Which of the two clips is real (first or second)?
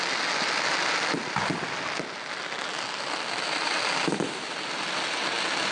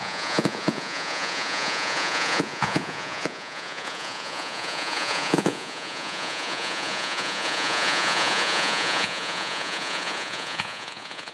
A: first